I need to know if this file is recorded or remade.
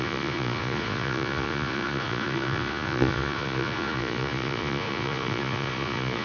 remade